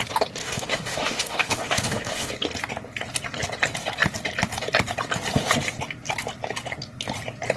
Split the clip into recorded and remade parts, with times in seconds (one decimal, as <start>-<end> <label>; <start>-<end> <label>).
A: 0.0-0.4 recorded; 0.4-2.3 remade; 2.3-7.6 recorded